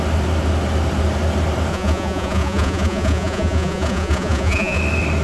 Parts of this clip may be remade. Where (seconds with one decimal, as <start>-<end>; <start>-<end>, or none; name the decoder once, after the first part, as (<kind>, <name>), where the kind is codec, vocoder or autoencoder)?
1.7-4.8 (vocoder, Vocos)